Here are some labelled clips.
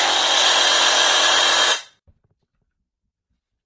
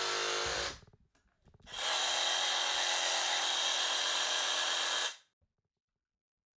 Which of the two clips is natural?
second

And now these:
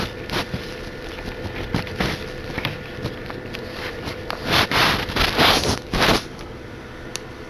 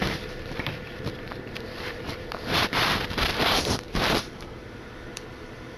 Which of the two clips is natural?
first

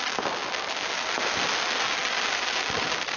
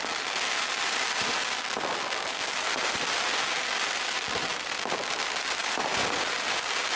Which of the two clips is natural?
first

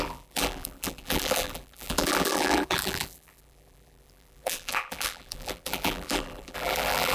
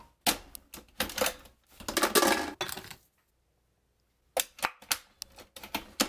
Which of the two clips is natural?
second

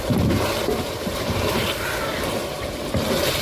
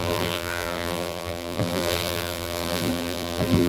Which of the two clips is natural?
first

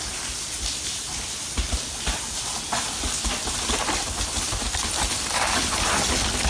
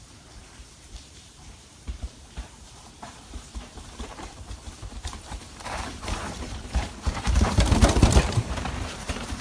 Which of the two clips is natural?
first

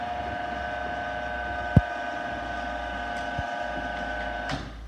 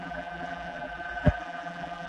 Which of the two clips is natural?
first